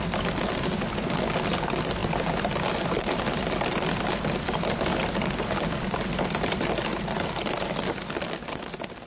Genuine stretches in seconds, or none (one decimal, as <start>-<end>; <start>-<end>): 0.0-9.1